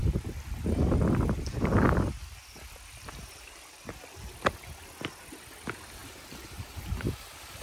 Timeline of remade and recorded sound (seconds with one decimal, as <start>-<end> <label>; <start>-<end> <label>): 0.0-7.6 recorded